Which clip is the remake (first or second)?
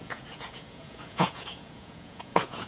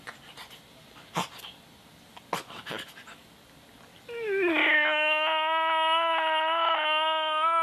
first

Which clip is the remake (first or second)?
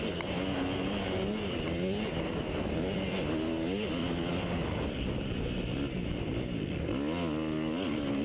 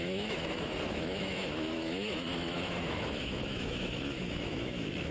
second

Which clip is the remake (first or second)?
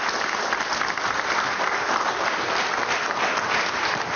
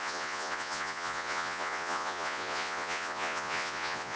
second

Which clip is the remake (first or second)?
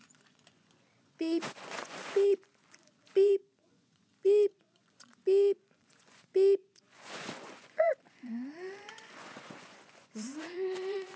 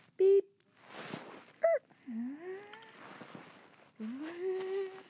first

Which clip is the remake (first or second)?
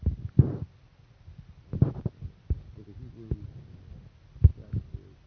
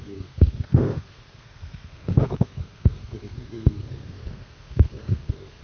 second